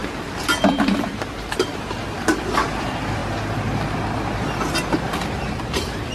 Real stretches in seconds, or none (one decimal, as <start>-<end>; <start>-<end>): 3.2-4.9